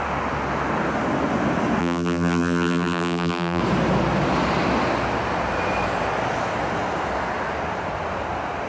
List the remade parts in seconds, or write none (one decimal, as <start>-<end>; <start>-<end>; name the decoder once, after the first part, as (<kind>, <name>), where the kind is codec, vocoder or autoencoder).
1.8-3.6 (vocoder, BigVGAN v2)